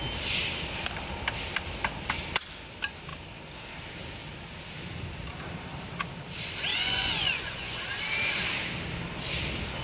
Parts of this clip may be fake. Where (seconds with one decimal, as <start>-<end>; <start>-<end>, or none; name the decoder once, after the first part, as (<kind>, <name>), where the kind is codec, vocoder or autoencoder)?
6.7-7.8 (vocoder, Vocos)